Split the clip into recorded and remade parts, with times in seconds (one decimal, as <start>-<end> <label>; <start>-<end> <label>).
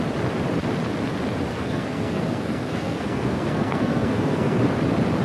0.0-1.5 recorded; 1.5-4.6 remade; 4.6-5.2 recorded